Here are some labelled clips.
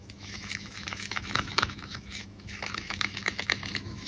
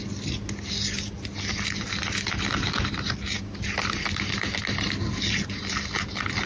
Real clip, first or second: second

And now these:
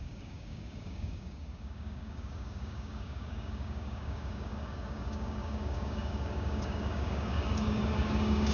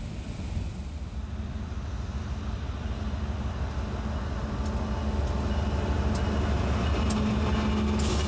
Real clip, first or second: second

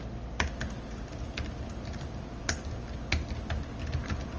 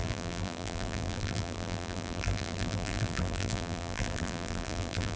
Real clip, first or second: first